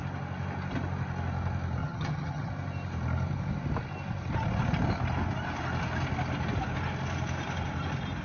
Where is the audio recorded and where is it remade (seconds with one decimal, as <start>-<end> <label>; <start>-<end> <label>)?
0.0-1.8 recorded; 1.8-2.5 remade; 2.5-8.2 recorded